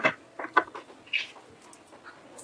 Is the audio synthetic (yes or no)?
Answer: no